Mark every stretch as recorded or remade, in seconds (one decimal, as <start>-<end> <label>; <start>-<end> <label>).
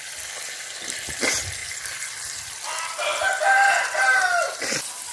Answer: 0.0-5.1 recorded